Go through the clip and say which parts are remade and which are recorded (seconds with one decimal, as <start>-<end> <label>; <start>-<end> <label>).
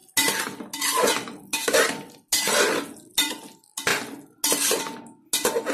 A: 0.0-5.7 recorded